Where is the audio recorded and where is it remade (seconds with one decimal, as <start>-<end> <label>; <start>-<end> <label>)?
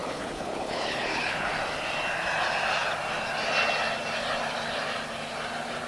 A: 0.0-1.5 remade; 1.5-5.9 recorded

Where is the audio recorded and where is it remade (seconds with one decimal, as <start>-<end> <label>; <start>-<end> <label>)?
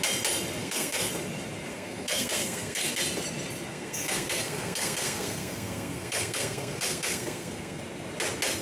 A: 0.0-0.6 recorded; 0.6-1.1 remade; 1.1-1.7 recorded; 1.7-3.0 remade; 3.0-3.7 recorded; 3.7-7.8 remade; 7.8-8.6 recorded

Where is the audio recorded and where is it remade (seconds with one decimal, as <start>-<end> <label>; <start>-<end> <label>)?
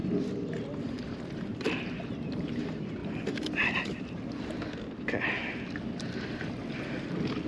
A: 0.0-1.3 recorded; 1.3-3.0 remade; 3.0-7.5 recorded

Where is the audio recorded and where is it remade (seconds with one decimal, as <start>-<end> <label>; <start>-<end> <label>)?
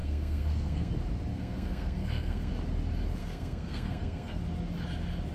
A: 0.0-0.9 remade; 0.9-1.3 recorded; 1.3-2.5 remade; 2.5-3.2 recorded; 3.2-4.4 remade; 4.4-5.3 recorded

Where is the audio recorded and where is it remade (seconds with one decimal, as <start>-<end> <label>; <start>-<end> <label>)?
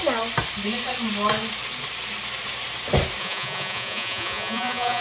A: 0.0-3.2 recorded; 3.2-5.0 remade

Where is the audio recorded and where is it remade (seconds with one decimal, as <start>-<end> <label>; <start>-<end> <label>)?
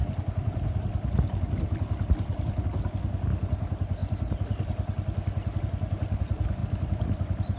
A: 0.0-7.6 recorded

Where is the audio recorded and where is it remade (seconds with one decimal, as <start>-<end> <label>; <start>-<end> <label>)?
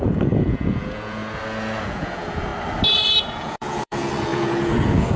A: 0.0-1.2 remade; 1.2-1.8 recorded; 1.8-2.5 remade; 2.5-3.2 recorded; 3.2-5.2 remade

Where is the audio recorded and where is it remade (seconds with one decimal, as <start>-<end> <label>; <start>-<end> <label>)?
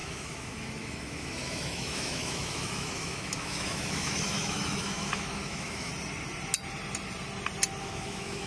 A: 0.0-5.9 remade; 5.9-7.8 recorded; 7.8-8.5 remade